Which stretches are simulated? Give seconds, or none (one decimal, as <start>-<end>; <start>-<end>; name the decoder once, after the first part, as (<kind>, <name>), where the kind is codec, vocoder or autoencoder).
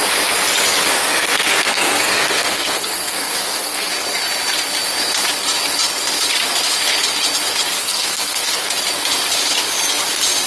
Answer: 1.0-3.9 (codec, SNAC); 7.8-8.7